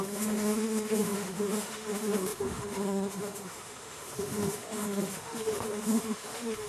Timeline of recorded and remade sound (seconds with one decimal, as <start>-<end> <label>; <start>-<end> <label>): 0.0-6.7 remade